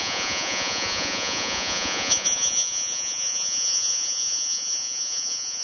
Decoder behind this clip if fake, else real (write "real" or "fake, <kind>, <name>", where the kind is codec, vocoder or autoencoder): fake, vocoder, Vocos